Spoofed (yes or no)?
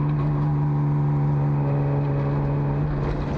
no